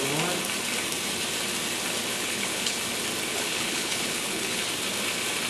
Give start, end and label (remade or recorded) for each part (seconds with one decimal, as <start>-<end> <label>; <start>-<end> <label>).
0.0-2.1 recorded; 2.1-2.8 remade; 2.8-3.3 recorded; 3.3-4.6 remade; 4.6-5.5 recorded